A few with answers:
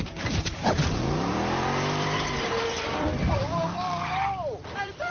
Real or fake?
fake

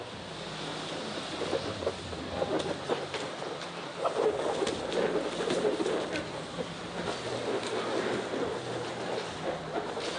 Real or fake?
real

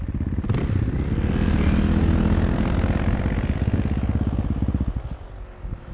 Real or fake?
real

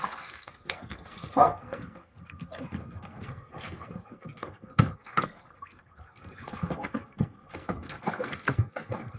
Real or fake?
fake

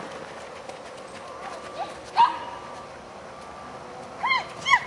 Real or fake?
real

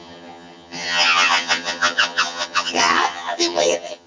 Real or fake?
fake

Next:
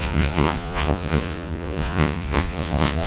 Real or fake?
fake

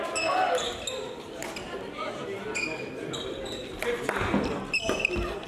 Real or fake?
real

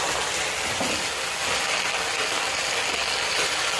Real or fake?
real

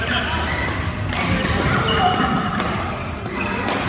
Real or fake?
real